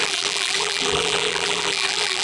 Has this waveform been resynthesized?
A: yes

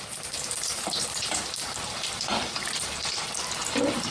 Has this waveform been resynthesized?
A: yes